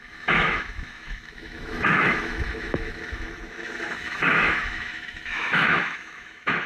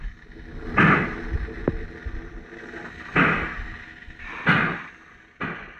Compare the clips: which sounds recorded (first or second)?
second